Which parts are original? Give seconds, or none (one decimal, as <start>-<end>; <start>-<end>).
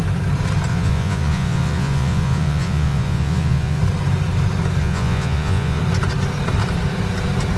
0.0-0.7; 3.8-4.8; 5.8-7.6